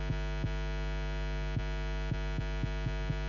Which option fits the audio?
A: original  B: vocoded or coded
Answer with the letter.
A